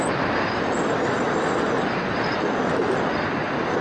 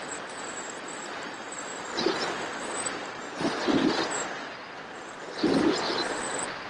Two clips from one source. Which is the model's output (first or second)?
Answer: second